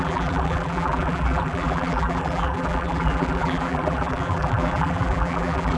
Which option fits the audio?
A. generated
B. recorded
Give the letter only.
A